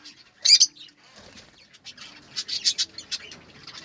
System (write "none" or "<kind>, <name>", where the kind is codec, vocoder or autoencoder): none